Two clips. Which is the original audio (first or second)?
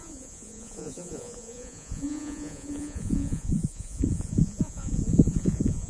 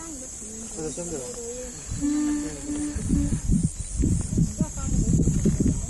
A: second